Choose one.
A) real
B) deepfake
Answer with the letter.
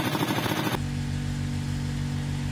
A